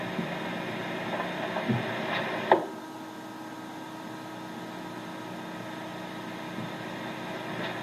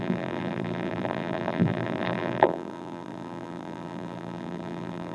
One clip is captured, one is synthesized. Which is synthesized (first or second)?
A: second